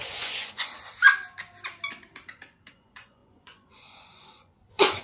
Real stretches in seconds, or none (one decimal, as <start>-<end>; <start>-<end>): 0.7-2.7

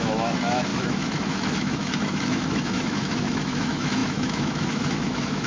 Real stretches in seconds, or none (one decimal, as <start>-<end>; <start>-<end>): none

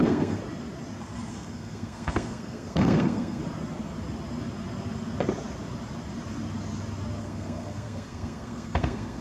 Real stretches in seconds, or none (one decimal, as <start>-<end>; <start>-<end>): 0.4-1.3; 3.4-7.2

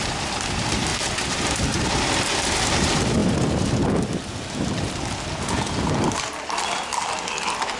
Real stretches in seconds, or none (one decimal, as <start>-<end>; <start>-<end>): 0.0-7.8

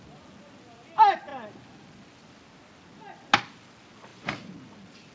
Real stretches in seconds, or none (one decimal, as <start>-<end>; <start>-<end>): 0.0-5.1

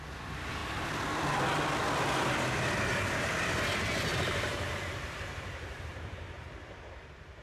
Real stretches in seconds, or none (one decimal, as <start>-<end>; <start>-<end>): 0.0-4.1; 6.6-7.4

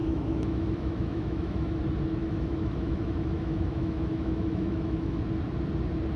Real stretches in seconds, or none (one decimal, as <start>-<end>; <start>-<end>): 1.8-2.2; 5.2-6.2